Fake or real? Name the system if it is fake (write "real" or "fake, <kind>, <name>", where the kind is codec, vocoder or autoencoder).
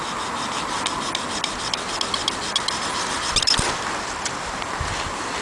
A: real